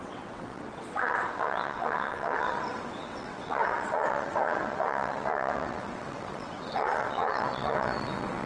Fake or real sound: fake